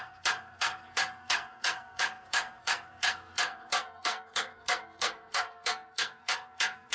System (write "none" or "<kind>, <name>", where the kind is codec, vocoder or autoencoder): codec, SNAC